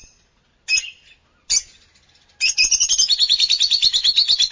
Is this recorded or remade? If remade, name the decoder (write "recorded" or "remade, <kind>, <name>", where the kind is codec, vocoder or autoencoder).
recorded